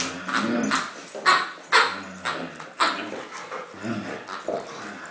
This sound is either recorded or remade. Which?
recorded